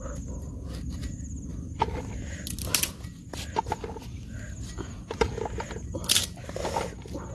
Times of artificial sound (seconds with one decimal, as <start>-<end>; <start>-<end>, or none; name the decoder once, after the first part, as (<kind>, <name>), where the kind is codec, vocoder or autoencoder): none